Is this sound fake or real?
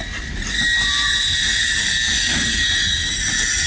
real